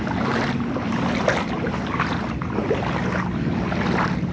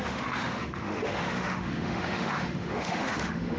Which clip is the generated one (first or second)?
second